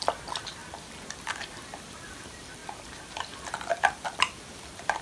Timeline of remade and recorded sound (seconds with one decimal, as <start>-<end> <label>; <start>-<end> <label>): 0.0-0.6 remade; 0.6-1.2 recorded; 1.2-2.6 remade; 2.6-3.4 recorded; 3.4-5.0 remade